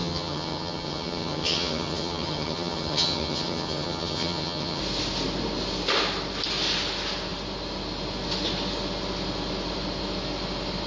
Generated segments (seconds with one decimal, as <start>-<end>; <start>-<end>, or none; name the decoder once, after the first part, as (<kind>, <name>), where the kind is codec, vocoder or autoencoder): 0.0-4.8 (vocoder, HiFi-GAN)